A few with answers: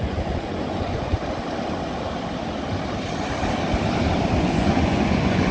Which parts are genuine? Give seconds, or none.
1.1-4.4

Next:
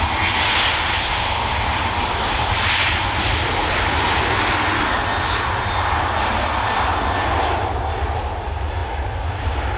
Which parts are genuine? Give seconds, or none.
0.0-9.8

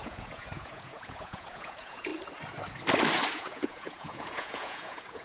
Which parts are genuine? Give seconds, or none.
2.1-3.3

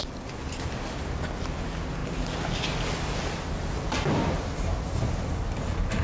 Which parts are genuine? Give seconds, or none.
0.0-6.0

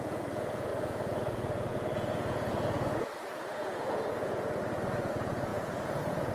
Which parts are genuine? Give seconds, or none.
none

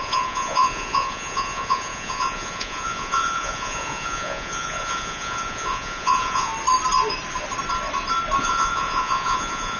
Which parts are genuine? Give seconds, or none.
6.5-8.4